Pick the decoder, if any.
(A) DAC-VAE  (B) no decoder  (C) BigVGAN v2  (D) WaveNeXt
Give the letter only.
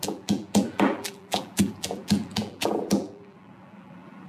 C